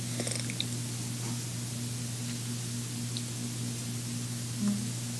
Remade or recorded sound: recorded